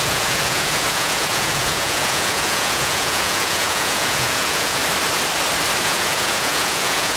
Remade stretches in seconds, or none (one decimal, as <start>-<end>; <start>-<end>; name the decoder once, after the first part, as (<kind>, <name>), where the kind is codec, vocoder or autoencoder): 0.0-4.8 (vocoder, Vocos); 5.8-7.2